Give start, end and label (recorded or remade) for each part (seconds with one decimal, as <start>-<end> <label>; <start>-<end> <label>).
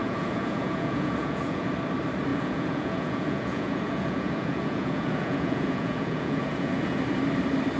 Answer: 0.0-1.7 remade; 1.7-2.3 recorded; 2.3-7.0 remade; 7.0-7.8 recorded